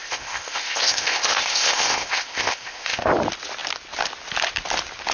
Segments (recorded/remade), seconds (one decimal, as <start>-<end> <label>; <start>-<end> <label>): 0.0-3.1 remade; 3.1-5.1 recorded